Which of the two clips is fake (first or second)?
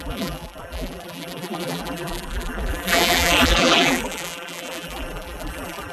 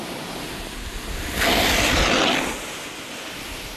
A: first